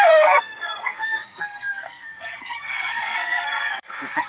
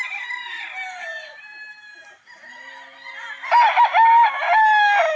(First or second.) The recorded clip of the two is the second